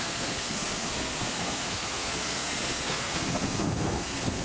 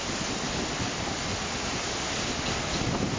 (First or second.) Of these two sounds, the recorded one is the second